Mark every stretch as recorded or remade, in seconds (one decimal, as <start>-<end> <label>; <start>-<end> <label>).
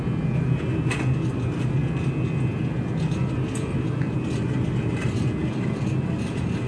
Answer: 0.0-6.7 recorded